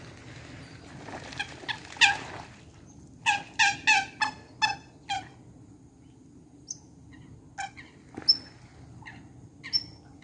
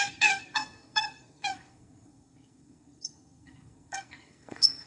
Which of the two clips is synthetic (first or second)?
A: second